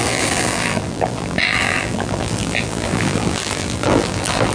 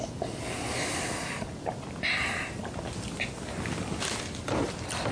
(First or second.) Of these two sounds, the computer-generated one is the first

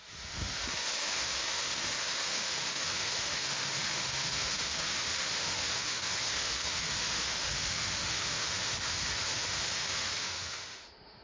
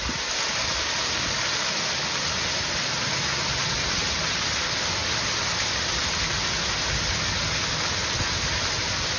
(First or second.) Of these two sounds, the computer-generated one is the first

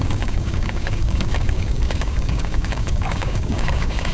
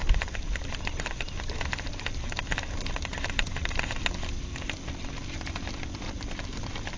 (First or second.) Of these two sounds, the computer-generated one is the first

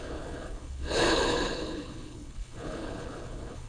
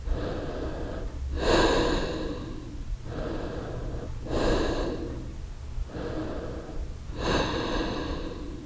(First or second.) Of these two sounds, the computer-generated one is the first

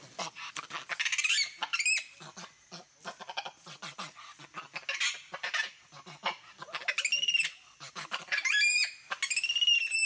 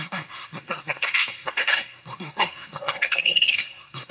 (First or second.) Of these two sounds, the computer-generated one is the second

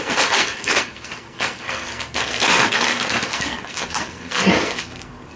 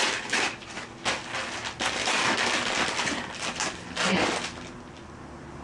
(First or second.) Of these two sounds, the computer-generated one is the first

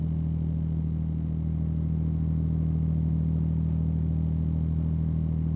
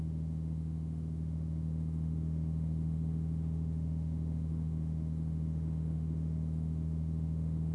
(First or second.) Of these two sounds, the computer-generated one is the second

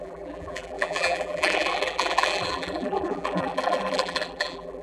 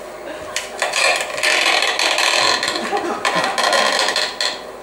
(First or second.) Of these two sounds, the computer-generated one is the first